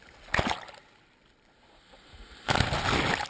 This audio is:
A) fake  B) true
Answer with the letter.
B